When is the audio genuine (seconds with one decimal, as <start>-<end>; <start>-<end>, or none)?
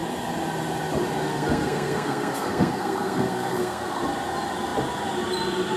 0.0-1.3; 4.0-5.8